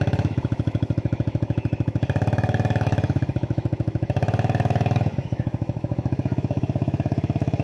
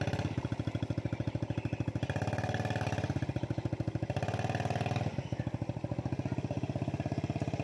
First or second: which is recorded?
second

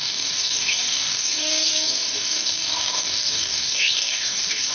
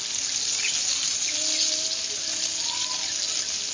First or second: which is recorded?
second